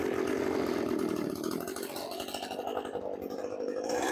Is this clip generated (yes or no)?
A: no